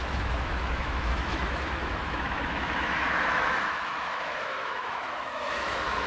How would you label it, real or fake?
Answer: fake